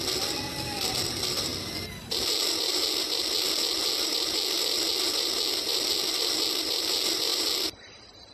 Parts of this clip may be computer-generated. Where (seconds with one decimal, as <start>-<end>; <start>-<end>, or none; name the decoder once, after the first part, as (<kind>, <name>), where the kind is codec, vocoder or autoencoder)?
none